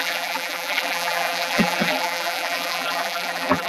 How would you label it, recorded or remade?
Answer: remade